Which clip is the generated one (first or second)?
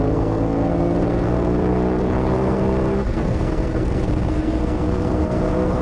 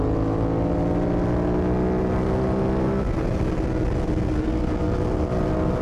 first